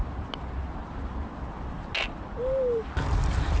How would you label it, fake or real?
real